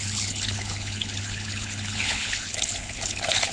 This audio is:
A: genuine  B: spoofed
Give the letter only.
B